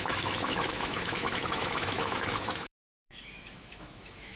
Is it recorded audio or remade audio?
remade